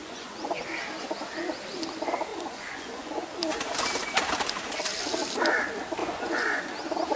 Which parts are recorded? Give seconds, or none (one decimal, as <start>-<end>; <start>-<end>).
0.6-2.3; 3.3-6.0; 6.6-7.2